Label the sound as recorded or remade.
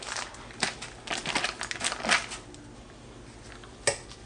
recorded